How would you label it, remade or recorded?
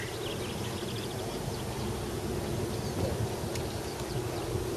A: recorded